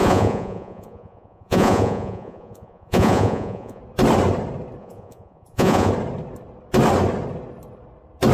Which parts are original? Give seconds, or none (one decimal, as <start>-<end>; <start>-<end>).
3.8-4.8; 5.9-8.3